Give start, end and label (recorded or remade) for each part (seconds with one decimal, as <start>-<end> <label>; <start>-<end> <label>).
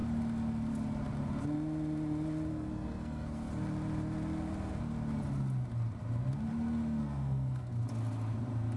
0.0-2.5 recorded; 2.5-3.5 remade; 3.5-7.0 recorded; 7.0-7.7 remade; 7.7-8.8 recorded